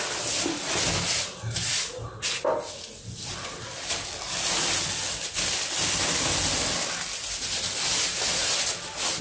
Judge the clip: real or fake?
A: real